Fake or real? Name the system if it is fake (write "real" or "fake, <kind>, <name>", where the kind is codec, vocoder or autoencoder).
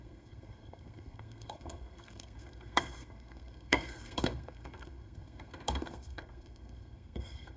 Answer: fake, codec, SNAC